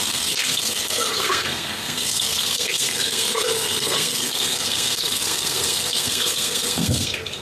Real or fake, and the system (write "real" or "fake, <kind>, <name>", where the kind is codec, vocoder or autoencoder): fake, codec, SNAC